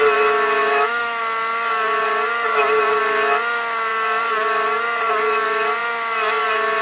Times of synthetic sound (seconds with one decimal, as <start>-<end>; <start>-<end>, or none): 0.6-1.2